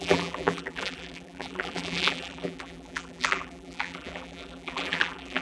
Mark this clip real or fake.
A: fake